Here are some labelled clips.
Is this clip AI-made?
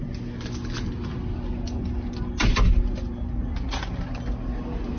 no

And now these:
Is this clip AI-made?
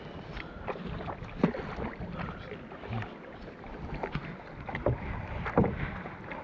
no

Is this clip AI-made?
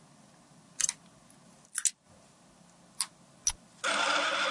no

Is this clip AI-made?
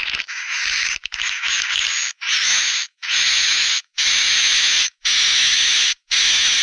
yes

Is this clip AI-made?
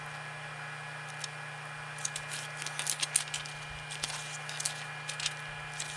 no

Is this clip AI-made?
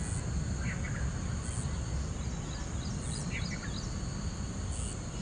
no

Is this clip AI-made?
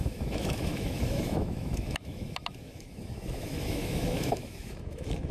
yes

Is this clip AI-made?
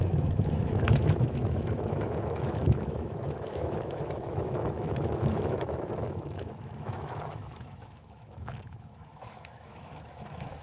yes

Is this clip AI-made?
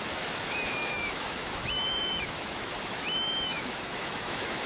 yes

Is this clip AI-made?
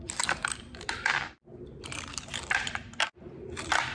no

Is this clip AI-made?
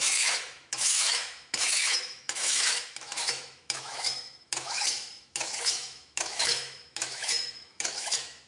yes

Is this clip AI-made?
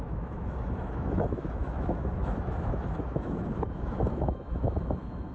yes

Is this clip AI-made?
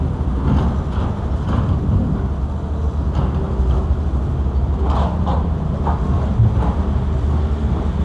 no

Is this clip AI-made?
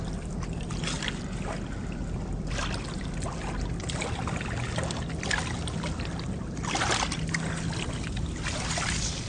no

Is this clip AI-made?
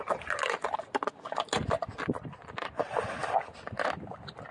no